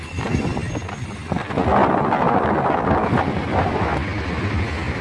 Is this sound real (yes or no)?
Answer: yes